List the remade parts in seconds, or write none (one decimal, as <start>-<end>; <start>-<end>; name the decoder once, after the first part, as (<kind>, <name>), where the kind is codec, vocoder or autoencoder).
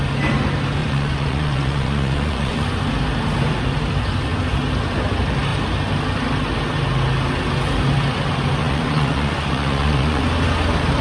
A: 0.8-2.8 (vocoder, Vocos); 8.6-10.2